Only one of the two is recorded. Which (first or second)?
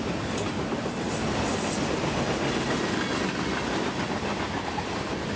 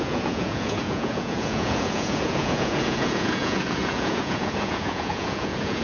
first